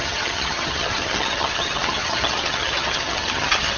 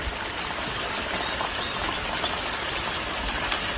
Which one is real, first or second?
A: second